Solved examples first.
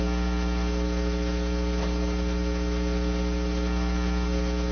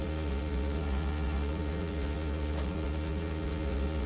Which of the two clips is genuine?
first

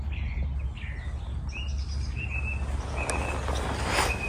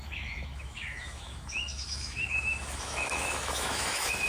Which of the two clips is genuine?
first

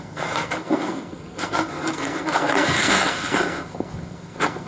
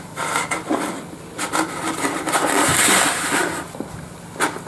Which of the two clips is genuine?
second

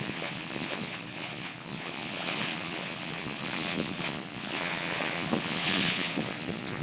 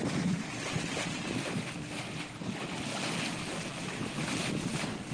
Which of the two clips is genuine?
second